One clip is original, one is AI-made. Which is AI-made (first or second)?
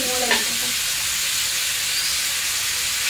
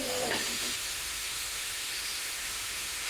second